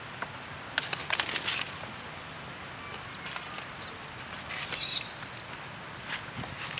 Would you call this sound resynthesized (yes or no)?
no